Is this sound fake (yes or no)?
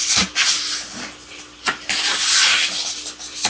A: no